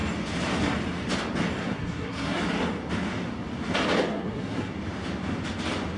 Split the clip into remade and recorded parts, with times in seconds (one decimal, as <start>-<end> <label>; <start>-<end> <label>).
0.0-1.6 recorded; 1.6-2.4 remade; 2.4-4.1 recorded; 4.1-4.7 remade; 4.7-6.0 recorded